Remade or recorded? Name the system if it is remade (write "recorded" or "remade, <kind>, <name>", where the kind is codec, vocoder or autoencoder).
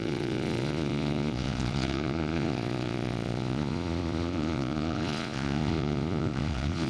remade, vocoder, Vocos